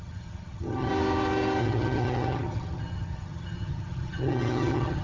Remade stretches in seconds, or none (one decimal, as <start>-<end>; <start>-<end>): 0.0-0.9; 1.6-5.0

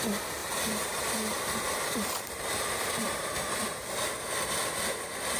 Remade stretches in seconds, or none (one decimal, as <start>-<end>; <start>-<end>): 0.4-3.6

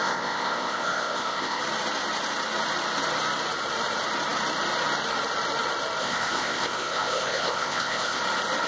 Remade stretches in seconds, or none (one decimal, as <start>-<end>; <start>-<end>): 0.0-1.6; 6.0-8.2

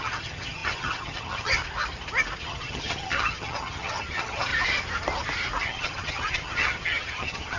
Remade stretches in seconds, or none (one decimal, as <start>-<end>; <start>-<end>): 0.0-1.6; 2.4-4.5; 5.6-7.6

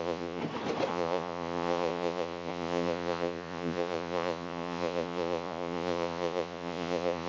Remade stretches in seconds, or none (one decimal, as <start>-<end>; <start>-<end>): 0.0-0.4; 0.9-7.3

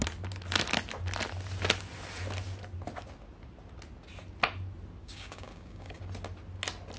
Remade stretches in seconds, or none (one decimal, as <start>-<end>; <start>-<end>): 5.0-6.0

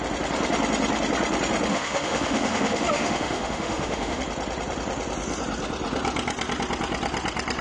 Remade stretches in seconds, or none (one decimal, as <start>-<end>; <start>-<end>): 1.7-4.2

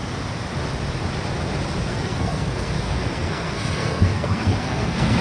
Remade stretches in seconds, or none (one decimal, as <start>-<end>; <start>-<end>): 1.8-5.2